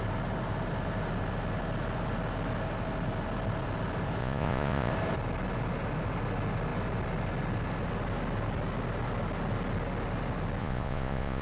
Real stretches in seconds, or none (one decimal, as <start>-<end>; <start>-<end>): 0.0-4.2; 4.9-10.6